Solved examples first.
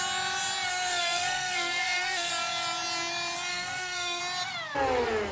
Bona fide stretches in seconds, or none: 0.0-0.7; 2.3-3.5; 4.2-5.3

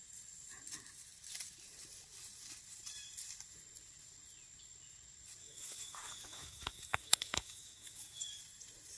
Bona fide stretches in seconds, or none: 0.0-5.4; 8.4-9.0

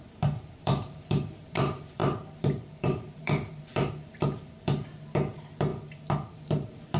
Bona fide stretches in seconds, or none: 5.7-6.4

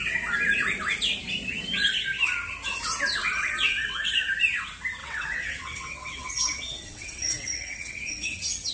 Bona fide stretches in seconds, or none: 0.0-3.2; 4.1-5.0

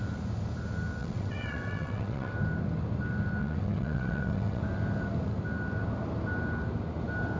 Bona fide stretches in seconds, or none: 0.0-1.0; 2.3-3.4; 4.6-7.4

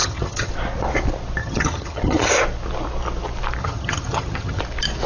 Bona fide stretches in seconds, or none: 0.5-1.4; 2.3-3.6; 4.6-5.1